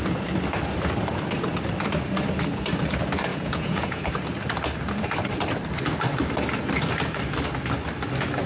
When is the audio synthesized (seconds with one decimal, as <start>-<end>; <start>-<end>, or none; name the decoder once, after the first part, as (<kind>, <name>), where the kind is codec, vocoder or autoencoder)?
3.3-4.1 (vocoder, Vocos)